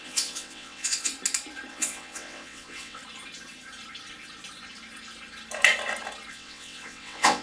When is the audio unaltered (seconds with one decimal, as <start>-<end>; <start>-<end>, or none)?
1.1-1.7; 3.0-6.3